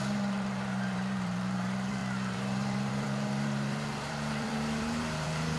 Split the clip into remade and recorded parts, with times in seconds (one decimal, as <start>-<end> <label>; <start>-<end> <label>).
0.0-5.6 remade